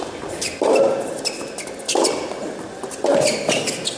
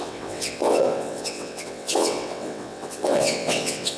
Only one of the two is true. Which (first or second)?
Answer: first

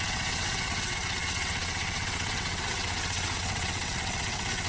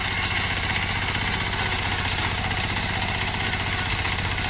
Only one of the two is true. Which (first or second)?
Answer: second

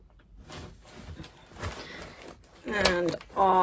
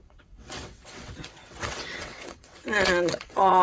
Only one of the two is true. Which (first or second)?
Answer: first